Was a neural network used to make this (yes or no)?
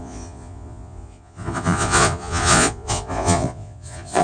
yes